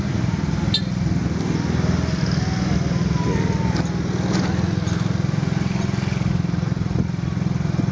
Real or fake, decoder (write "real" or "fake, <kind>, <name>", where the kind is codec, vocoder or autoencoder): real